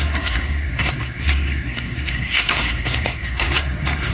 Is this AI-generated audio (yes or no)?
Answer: yes